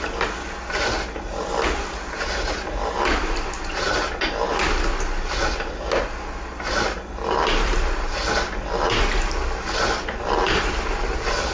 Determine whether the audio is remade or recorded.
recorded